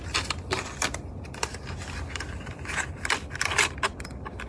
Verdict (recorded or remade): recorded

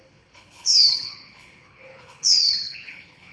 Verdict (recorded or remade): remade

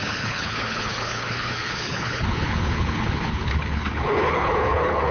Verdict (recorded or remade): remade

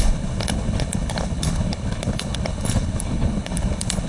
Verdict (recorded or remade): remade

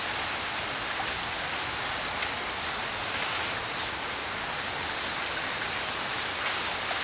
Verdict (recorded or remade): recorded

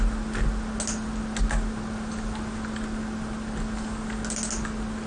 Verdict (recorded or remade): recorded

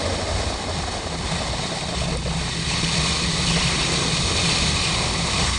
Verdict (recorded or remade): recorded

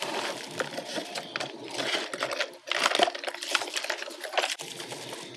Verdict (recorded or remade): recorded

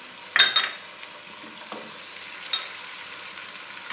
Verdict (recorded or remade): recorded